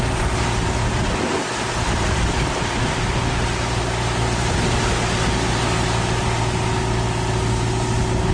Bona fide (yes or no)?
yes